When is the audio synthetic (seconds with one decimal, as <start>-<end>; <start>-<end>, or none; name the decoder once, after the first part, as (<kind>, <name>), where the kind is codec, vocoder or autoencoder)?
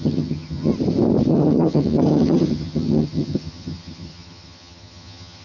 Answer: 0.0-0.7 (vocoder, HiFi-GAN); 1.3-5.4